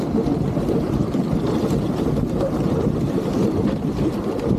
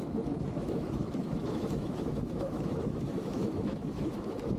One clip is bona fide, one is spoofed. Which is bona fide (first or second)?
first